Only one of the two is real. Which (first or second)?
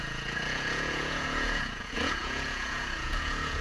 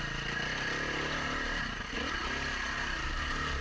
second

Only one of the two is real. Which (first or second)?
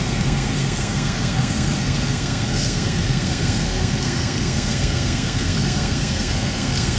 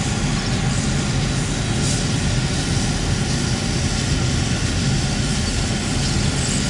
second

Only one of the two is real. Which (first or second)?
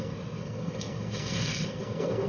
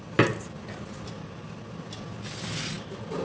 second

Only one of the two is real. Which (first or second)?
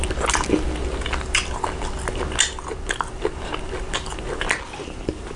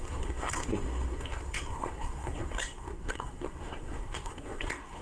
first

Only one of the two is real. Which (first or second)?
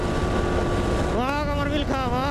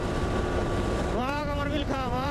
first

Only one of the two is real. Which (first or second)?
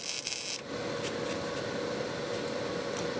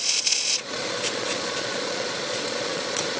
first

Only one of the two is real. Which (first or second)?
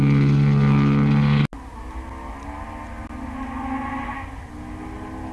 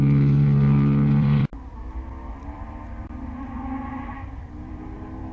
first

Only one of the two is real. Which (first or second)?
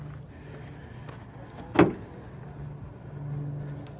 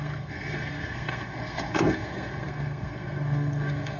first